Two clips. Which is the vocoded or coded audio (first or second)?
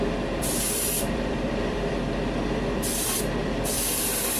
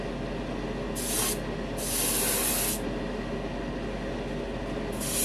first